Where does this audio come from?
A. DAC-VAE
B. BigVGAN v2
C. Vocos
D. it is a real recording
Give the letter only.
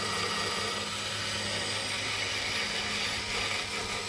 D